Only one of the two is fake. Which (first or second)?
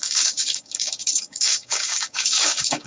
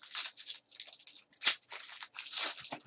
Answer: first